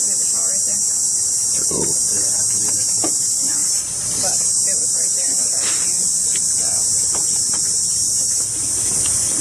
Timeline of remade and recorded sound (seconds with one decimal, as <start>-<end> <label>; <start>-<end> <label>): 0.0-0.5 recorded; 0.5-1.4 remade; 1.4-3.6 recorded; 3.6-5.5 remade; 5.5-9.4 recorded